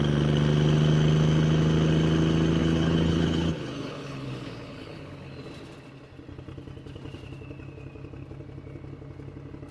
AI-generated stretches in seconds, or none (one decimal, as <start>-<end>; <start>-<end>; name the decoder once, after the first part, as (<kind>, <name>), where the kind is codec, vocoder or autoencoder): 2.6-5.3 (codec, HILCodec)